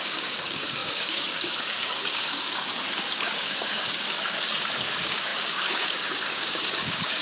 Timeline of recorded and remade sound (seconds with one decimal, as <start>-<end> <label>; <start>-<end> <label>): 0.0-7.2 remade